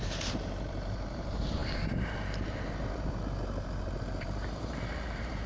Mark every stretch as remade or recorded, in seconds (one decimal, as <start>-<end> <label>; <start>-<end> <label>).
0.0-5.5 remade

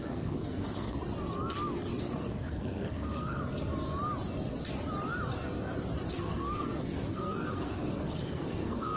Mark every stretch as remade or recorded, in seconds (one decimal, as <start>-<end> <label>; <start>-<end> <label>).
0.0-1.0 remade; 1.0-2.0 recorded; 2.0-3.4 remade; 3.4-6.1 recorded; 6.1-9.0 remade

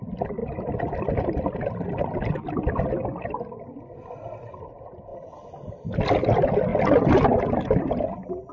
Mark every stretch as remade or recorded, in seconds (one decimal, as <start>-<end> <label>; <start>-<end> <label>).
0.0-8.5 recorded

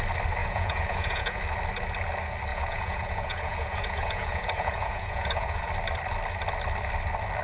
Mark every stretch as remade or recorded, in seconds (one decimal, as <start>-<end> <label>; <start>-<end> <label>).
0.0-0.4 recorded; 0.4-1.4 remade; 1.4-2.5 recorded; 2.5-5.7 remade; 5.7-7.4 recorded

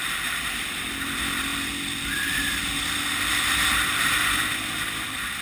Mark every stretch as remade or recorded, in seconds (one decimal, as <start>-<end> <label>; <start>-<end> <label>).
0.0-5.4 remade